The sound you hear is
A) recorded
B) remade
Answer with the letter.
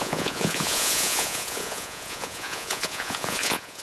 B